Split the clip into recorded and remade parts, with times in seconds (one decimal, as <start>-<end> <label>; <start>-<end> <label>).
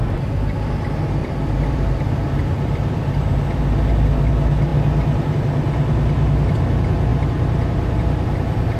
0.0-1.2 recorded; 1.2-4.3 remade; 4.3-4.7 recorded; 4.7-5.2 remade; 5.2-8.8 recorded